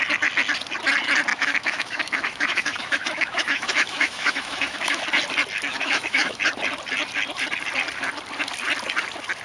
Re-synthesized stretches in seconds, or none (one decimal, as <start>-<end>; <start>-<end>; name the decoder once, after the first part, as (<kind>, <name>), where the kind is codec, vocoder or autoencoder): 1.3-5.0 (autoencoder, DAC-VAE); 5.7-6.4